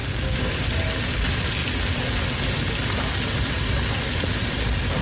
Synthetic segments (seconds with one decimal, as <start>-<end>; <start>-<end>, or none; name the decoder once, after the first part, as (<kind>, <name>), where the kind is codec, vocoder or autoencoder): 0.0-0.5 (codec, DAC)